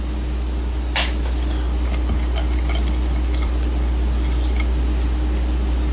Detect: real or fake real